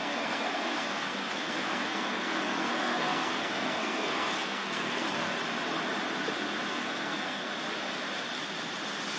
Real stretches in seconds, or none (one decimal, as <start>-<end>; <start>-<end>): 5.3-6.7; 7.5-9.2